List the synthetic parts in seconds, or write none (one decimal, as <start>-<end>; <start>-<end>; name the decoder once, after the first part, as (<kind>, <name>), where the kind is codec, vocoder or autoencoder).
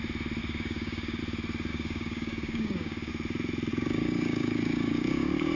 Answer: 0.4-1.2 (codec, DAC); 1.7-3.1; 3.7-5.6